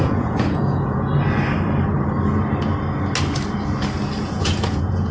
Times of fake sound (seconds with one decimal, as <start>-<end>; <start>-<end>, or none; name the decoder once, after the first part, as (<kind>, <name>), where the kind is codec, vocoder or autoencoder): 0.0-1.1 (vocoder, Vocos); 4.2-5.1